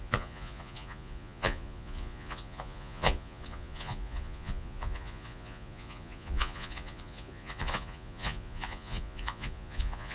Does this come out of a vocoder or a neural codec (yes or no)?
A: yes